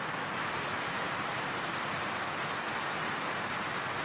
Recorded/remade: recorded